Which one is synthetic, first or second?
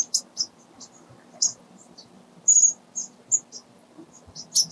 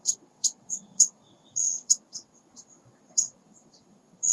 second